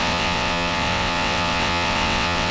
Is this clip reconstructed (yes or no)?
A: yes